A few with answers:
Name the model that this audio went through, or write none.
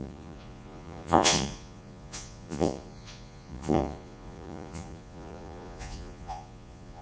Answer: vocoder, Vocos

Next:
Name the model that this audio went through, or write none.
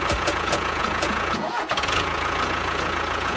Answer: vocoder, Vocos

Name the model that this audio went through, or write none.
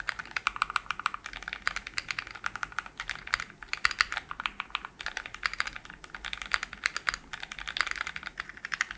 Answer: none